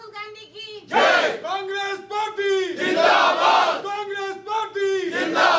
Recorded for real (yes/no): yes